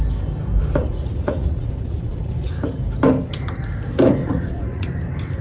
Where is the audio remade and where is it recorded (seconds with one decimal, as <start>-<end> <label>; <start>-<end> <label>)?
0.0-0.8 recorded; 0.8-2.5 remade; 2.5-4.2 recorded; 4.2-4.9 remade; 4.9-5.4 recorded